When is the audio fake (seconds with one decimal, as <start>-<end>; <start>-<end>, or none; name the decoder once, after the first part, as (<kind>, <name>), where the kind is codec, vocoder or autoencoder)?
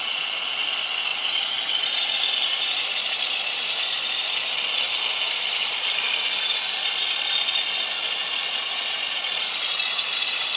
0.0-10.6 (vocoder, BigVGAN v2)